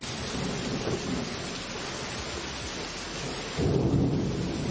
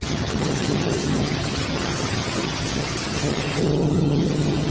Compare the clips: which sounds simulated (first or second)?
second